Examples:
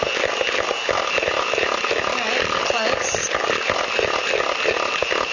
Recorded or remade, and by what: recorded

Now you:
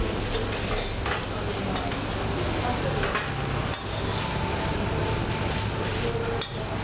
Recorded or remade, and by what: recorded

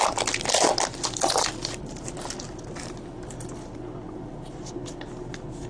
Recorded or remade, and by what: recorded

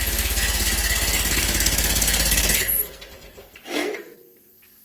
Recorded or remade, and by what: remade, codec, SNAC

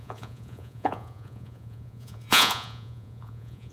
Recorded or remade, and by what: remade, vocoder, Vocos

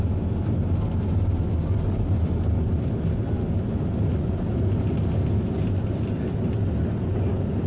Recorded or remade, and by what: recorded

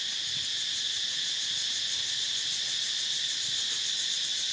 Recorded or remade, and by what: recorded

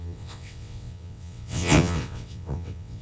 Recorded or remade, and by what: remade, vocoder, WaveNeXt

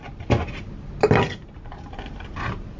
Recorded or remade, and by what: recorded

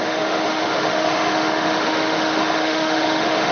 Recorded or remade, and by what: remade, autoencoder, DAC-VAE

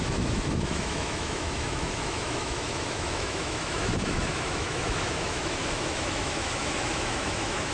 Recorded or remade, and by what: remade, autoencoder, DAC-VAE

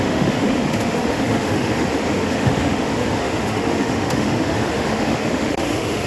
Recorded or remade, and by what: remade, autoencoder, DAC-VAE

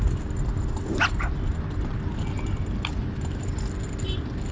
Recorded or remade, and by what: recorded